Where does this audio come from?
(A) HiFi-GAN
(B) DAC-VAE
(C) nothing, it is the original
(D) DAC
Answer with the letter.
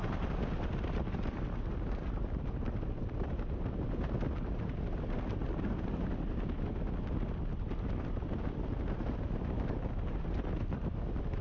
C